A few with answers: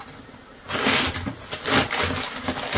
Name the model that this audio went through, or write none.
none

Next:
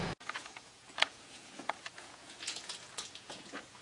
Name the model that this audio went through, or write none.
vocoder, Vocos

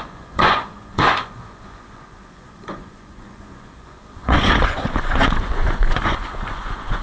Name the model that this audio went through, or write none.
vocoder, Vocos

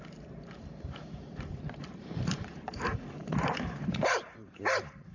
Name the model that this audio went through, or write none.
vocoder, BigVGAN v2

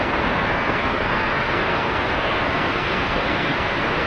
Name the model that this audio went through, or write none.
codec, SNAC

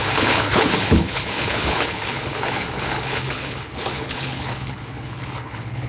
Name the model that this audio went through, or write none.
codec, HILCodec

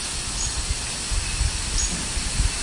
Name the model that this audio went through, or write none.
none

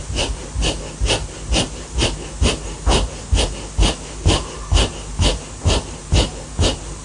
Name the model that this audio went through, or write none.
none